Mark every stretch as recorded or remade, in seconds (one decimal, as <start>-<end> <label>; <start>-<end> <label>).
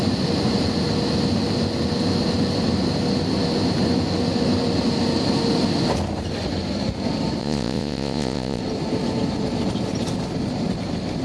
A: 0.0-7.4 recorded; 7.4-8.6 remade; 8.6-11.2 recorded